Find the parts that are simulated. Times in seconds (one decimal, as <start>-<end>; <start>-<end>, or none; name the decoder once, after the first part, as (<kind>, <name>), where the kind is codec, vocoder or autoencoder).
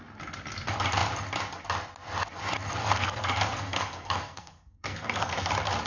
2.8-5.5 (codec, SNAC)